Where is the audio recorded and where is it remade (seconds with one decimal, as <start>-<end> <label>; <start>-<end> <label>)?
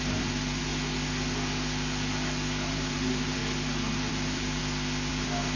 0.0-0.7 remade; 0.7-2.7 recorded; 2.7-3.4 remade; 3.4-4.1 recorded; 4.1-4.6 remade; 4.6-5.1 recorded; 5.1-5.6 remade